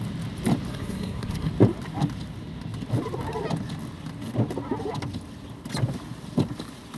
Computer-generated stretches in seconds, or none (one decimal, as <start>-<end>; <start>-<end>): 0.7-1.5

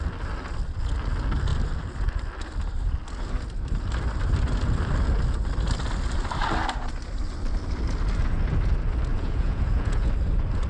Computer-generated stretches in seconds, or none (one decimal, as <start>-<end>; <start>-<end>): 9.1-10.1